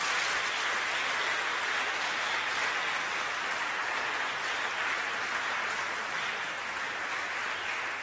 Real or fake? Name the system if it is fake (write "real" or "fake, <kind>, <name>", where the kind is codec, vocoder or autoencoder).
real